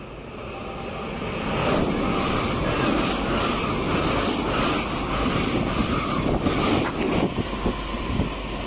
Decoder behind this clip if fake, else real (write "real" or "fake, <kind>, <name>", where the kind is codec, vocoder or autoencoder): real